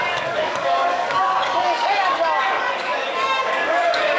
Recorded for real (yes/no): no